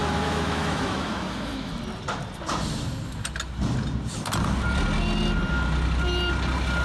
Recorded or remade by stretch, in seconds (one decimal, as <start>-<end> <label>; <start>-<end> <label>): 0.0-1.7 remade; 1.7-6.8 recorded